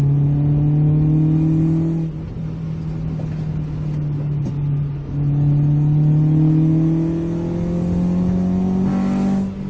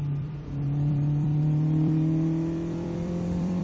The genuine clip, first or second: first